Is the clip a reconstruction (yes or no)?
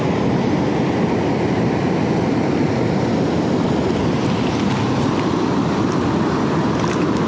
no